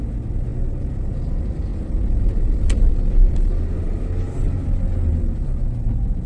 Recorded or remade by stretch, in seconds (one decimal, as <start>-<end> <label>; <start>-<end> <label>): 0.0-6.3 recorded